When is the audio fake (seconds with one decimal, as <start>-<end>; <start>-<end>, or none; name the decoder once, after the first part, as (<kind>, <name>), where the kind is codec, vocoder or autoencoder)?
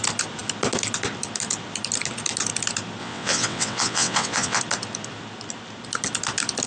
3.0-4.6 (vocoder, WaveNeXt)